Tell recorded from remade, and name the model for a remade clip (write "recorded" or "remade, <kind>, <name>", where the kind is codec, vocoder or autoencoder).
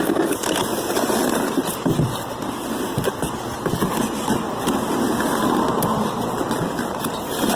recorded